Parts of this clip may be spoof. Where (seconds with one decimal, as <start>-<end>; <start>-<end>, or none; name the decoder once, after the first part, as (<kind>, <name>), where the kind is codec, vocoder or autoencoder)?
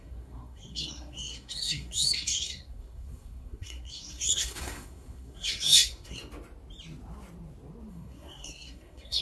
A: 0.0-6.2 (codec, SNAC); 7.9-9.2